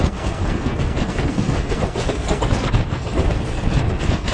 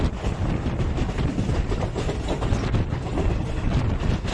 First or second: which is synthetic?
first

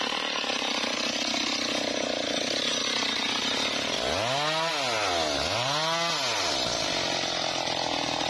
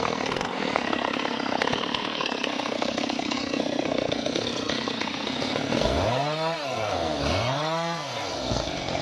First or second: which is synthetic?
second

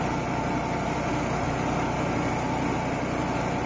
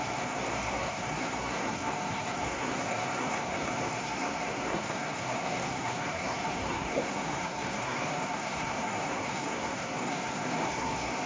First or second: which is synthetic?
second